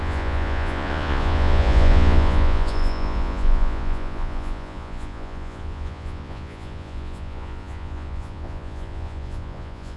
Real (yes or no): no